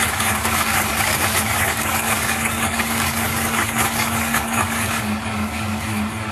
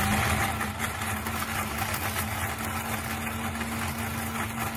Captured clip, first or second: second